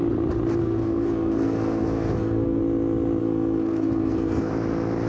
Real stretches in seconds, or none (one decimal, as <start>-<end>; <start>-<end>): 0.0-0.6; 2.6-3.2; 4.5-5.1

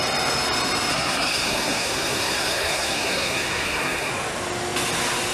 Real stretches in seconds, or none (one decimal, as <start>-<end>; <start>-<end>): 0.0-0.9; 4.1-5.3

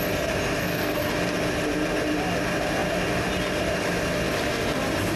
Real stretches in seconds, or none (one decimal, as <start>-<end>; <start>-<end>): 0.0-0.6; 1.1-5.2